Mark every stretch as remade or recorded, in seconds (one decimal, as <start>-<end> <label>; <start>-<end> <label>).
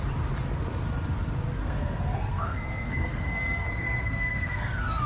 0.0-1.6 recorded; 1.6-5.1 remade